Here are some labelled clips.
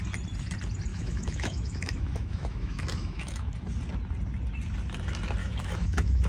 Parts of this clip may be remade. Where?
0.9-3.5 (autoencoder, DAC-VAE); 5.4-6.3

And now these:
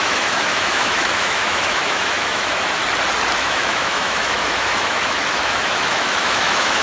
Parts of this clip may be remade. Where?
0.0-2.8 (autoencoder, DAC-VAE); 3.4-6.8

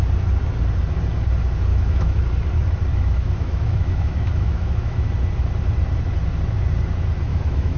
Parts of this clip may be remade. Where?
1.7-2.2 (autoencoder, DAC-VAE); 2.9-5.1; 7.3-7.8

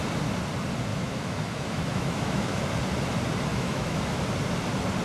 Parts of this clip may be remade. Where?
0.9-2.6 (autoencoder, DAC-VAE); 3.5-4.2

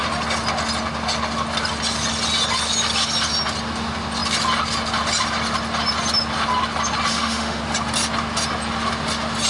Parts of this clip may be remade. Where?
7.1-7.6 (autoencoder, DAC-VAE)

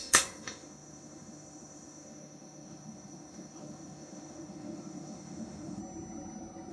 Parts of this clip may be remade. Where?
0.0-5.8 (autoencoder, DAC-VAE)

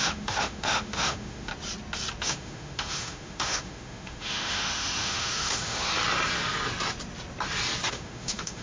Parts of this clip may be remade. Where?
0.0-1.5 (autoencoder, DAC-VAE); 2.2-5.9; 7.9-8.6